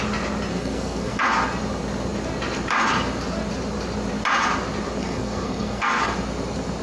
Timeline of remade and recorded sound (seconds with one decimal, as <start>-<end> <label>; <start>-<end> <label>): 0.0-0.5 recorded; 0.5-1.2 remade; 1.2-5.0 recorded; 5.0-6.1 remade; 6.1-6.8 recorded